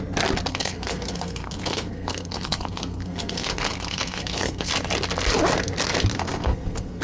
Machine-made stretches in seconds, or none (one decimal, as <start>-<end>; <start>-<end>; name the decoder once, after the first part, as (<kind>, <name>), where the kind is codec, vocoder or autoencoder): 0.5-4.7 (codec, SNAC); 6.1-7.0